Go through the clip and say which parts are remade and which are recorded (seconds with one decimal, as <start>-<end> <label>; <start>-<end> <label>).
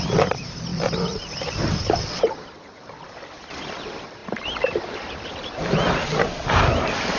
0.0-7.2 remade